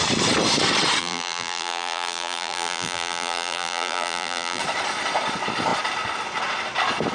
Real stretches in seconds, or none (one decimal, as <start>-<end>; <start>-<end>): 0.0-1.0; 4.6-7.1